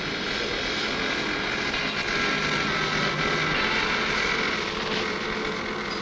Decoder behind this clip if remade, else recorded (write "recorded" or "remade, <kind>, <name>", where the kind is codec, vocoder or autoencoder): recorded